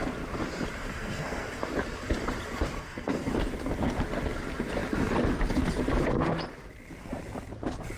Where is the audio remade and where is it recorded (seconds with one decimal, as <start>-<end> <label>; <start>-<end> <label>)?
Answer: 0.0-0.8 recorded; 0.8-1.6 remade; 1.6-2.8 recorded; 2.8-3.3 remade; 3.3-8.0 recorded